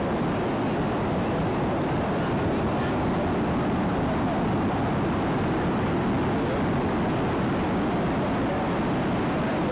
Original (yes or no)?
yes